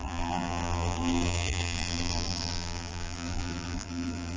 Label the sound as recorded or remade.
remade